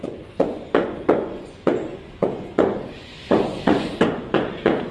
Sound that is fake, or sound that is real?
fake